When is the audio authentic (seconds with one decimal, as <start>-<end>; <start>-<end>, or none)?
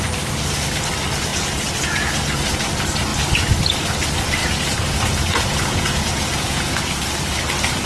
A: 0.0-1.3; 2.1-4.4; 6.8-7.9